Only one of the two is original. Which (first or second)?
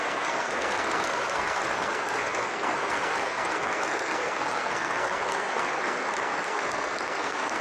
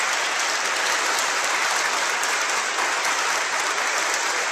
second